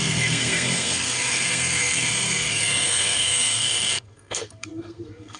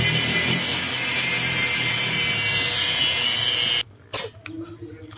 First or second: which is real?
second